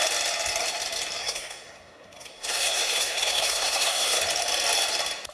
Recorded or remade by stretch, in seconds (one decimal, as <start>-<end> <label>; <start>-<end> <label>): 0.0-1.2 recorded; 1.2-4.2 remade; 4.2-5.3 recorded